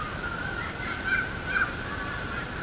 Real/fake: real